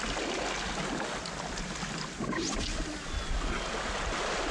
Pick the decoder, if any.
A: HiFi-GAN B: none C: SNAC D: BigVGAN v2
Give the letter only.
B